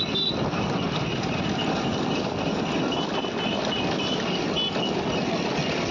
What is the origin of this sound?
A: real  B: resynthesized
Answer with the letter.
A